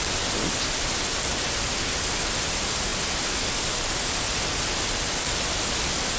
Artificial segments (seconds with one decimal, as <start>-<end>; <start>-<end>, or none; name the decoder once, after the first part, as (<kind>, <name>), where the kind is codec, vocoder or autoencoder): none